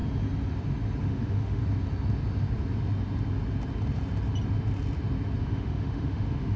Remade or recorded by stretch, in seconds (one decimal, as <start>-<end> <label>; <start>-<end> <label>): 0.0-1.0 recorded; 1.0-1.6 remade; 1.6-5.4 recorded; 5.4-6.6 remade